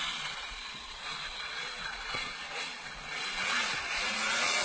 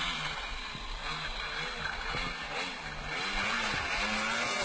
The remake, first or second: first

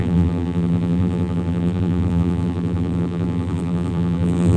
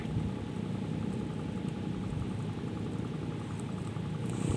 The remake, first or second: first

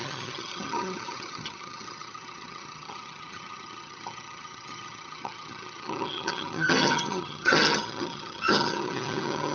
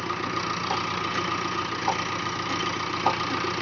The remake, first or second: first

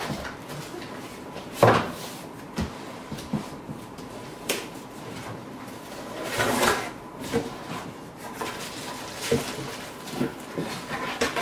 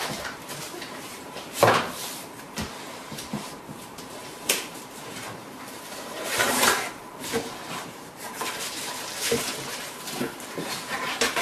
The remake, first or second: second